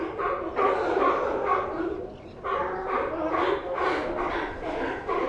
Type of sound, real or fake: real